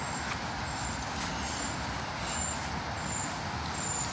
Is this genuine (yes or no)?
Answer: yes